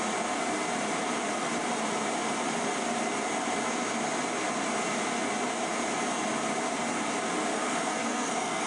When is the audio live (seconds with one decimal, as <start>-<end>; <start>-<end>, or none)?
0.0-7.5